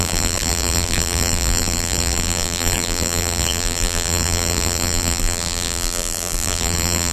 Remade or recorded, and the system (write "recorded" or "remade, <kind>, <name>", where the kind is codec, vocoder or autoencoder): remade, vocoder, BigVGAN v2